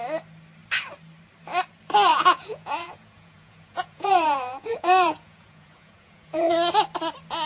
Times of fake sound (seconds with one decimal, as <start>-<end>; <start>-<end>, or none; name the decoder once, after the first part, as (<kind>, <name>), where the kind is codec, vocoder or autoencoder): 2.1-6.5 (vocoder, Vocos)